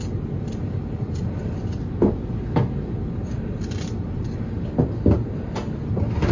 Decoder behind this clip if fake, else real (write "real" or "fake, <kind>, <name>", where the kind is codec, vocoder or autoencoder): real